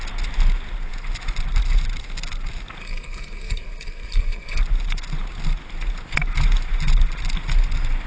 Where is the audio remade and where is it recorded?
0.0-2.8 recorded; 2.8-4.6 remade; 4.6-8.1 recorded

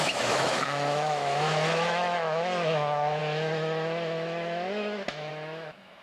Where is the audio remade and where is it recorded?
0.0-6.0 remade

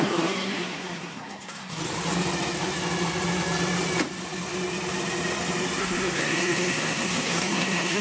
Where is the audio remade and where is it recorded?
0.0-1.8 remade; 1.8-5.8 recorded; 5.8-8.0 remade

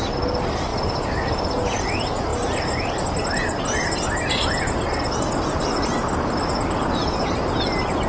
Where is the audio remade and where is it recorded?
0.0-8.1 recorded

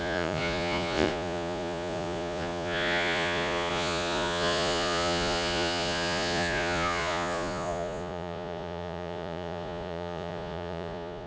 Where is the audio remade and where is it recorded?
0.0-11.3 remade

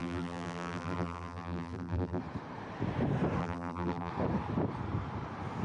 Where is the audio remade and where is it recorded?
0.0-2.2 remade; 2.2-3.4 recorded; 3.4-4.1 remade; 4.1-5.6 recorded

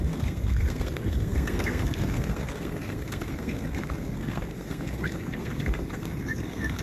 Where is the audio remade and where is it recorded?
0.0-6.8 remade